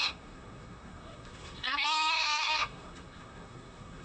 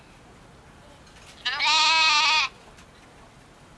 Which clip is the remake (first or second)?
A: first